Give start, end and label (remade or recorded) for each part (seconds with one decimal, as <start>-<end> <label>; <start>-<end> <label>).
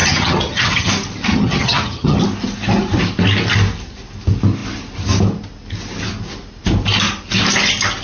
0.0-0.9 remade; 0.9-1.3 recorded; 1.3-2.2 remade; 2.2-8.0 recorded